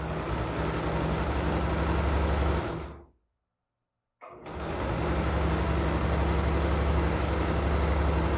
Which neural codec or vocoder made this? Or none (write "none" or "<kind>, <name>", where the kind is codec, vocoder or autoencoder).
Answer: none